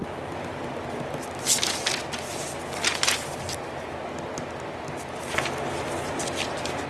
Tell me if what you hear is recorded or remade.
recorded